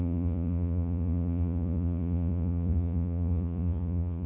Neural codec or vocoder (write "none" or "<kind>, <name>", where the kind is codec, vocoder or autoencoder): vocoder, Vocos